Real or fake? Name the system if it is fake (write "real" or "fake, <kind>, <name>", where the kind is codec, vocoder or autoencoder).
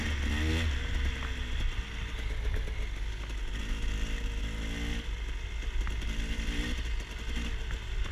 real